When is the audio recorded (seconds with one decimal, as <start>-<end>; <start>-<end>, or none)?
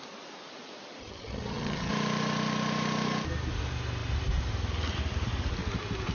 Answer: 0.0-1.0; 1.9-6.1